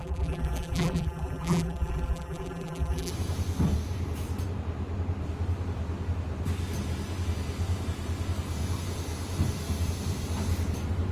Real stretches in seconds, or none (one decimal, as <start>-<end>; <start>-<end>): 3.1-11.1

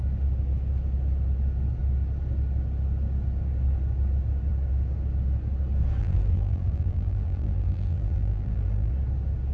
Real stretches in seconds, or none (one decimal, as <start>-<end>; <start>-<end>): 0.0-6.0; 8.9-9.5

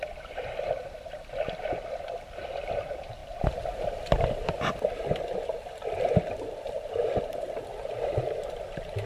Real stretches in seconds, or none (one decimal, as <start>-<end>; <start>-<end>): 7.7-8.5